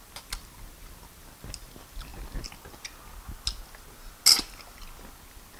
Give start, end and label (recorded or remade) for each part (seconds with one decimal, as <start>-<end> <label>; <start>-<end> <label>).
0.0-5.6 recorded